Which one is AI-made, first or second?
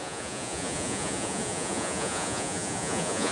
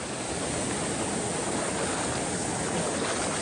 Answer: first